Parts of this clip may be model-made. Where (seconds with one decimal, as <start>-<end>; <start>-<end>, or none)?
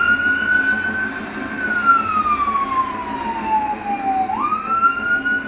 none